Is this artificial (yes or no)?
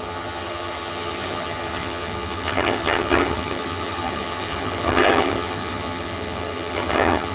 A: yes